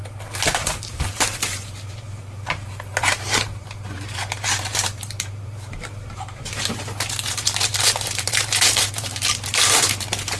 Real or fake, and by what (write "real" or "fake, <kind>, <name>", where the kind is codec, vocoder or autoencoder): fake, vocoder, BigVGAN v2